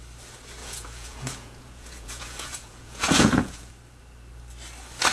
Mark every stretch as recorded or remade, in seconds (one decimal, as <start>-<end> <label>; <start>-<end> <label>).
0.0-0.6 recorded; 0.6-3.7 remade; 3.7-5.1 recorded